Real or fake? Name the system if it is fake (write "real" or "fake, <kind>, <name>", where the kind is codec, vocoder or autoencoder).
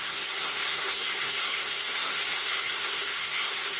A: fake, codec, SNAC